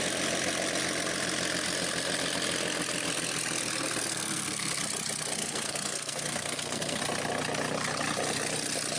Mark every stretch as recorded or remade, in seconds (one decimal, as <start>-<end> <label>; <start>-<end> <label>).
0.0-4.1 recorded; 4.1-4.8 remade; 4.8-5.4 recorded; 5.4-7.0 remade; 7.0-9.0 recorded